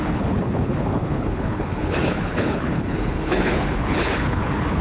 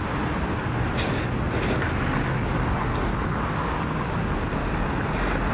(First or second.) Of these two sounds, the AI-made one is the first